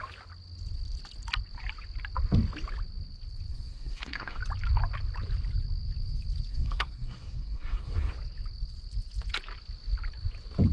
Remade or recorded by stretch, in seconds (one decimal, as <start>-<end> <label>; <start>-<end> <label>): 0.0-3.5 recorded; 3.5-4.4 remade; 4.4-6.5 recorded; 6.5-8.1 remade; 8.1-10.7 recorded